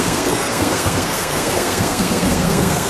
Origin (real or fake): fake